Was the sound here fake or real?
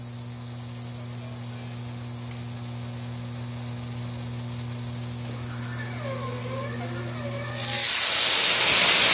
real